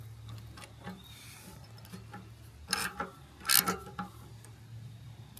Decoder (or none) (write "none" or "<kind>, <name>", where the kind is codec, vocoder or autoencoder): none